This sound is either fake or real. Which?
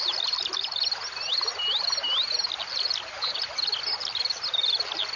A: real